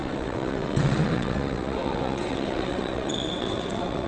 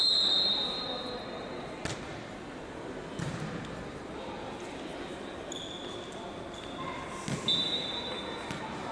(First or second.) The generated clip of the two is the first